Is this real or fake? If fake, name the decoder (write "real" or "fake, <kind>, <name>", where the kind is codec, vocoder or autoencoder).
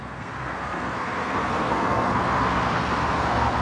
fake, codec, SNAC